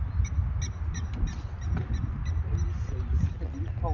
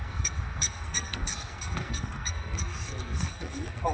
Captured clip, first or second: first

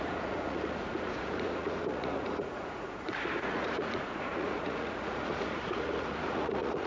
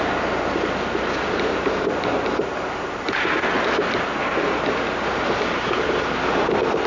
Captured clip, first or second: second